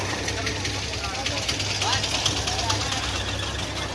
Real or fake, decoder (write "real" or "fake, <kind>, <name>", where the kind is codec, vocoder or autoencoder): real